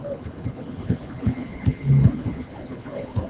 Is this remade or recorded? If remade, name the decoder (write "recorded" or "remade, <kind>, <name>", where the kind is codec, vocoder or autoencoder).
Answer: remade, codec, HILCodec